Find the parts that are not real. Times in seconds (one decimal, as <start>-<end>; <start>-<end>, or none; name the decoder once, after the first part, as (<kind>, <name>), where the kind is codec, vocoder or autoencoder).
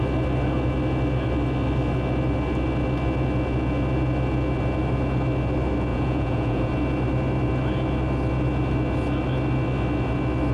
5.9-6.7 (vocoder, Vocos)